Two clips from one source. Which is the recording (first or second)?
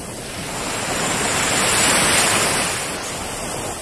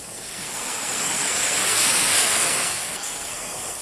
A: first